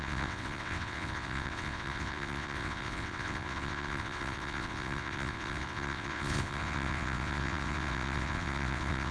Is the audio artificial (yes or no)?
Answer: yes